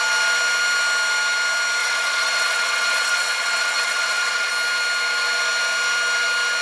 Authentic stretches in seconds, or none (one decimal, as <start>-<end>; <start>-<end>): 0.0-1.8; 4.5-6.6